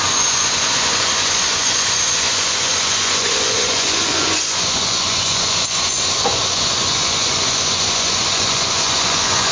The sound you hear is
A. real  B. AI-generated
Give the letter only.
B